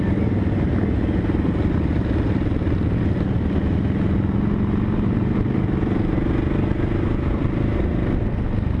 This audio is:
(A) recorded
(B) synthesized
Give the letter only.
A